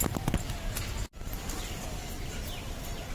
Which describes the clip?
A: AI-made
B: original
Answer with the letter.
B